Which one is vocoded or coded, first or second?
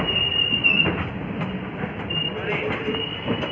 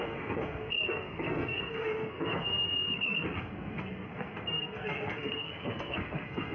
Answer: second